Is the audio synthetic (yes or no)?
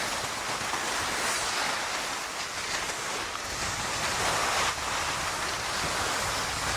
no